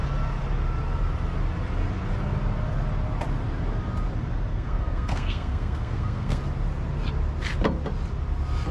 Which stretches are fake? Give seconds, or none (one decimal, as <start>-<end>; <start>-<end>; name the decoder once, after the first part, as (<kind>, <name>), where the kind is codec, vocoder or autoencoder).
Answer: 4.5-6.4 (codec, SNAC)